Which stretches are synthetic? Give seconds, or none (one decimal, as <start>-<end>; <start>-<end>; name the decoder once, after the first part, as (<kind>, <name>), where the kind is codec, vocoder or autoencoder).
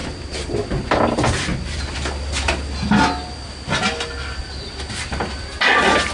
none